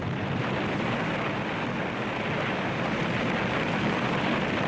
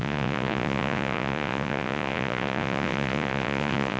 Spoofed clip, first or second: second